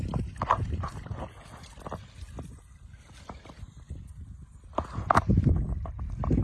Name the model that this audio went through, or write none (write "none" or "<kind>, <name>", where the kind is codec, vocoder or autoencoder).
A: none